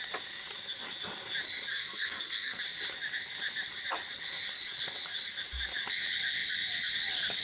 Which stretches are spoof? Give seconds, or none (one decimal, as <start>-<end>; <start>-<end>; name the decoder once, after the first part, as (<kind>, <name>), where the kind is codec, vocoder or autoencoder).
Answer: 1.7-2.6 (codec, SNAC)